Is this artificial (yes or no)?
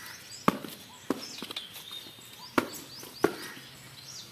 no